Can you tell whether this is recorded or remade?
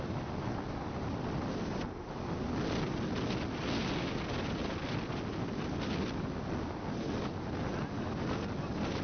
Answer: recorded